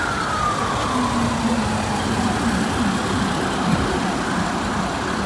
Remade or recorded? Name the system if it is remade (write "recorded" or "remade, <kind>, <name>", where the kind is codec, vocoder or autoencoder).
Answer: recorded